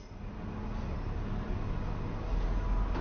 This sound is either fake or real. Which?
real